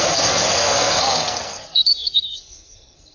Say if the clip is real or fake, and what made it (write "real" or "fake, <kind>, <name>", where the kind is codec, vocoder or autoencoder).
fake, codec, SNAC